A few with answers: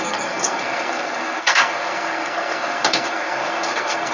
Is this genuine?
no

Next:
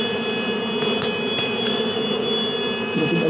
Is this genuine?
yes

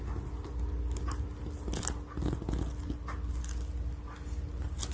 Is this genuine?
yes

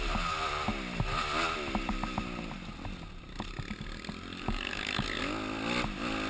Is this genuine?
yes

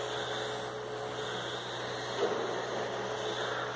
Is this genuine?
yes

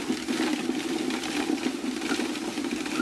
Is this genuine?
yes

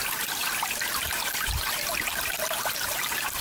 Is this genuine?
yes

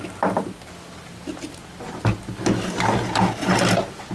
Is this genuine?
yes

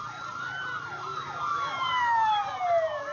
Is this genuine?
yes